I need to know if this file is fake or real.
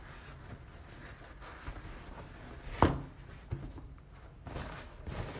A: real